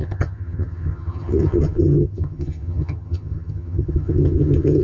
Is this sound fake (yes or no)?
yes